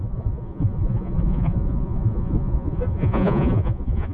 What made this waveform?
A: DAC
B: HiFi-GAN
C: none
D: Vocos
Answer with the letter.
D